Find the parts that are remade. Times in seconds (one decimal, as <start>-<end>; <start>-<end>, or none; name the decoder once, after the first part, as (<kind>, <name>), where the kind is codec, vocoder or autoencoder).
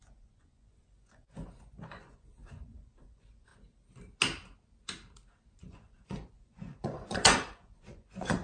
0.0-3.5 (vocoder, Vocos); 5.6-8.4